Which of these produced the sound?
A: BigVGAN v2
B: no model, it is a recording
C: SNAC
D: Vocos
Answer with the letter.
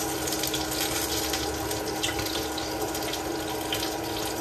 B